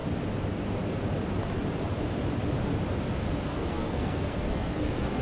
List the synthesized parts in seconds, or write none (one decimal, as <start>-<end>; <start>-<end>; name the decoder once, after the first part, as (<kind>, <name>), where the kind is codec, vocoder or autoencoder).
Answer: 3.5-5.2 (codec, SNAC)